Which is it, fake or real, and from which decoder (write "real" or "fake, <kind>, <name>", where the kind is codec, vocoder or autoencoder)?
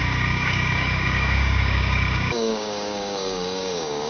fake, codec, DAC